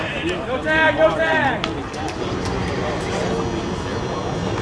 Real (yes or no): yes